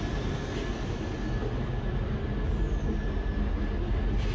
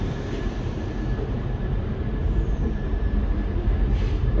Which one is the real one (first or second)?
first